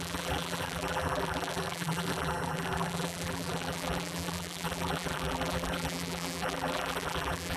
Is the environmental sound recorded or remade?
remade